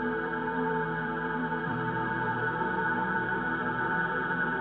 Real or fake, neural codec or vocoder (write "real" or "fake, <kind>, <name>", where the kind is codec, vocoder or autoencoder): fake, vocoder, BigVGAN v2